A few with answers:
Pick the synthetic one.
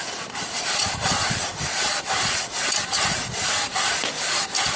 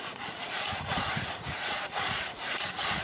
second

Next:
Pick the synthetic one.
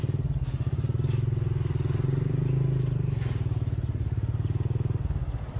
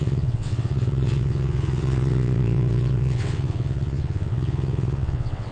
second